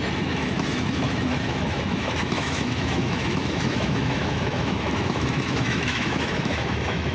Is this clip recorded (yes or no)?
no